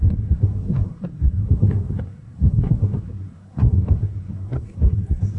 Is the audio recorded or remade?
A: remade